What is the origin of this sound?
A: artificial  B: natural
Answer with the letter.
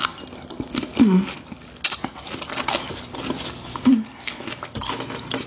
B